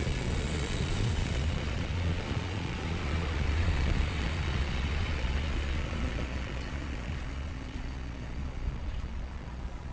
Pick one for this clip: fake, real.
fake